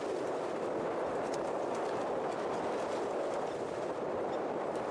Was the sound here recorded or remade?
recorded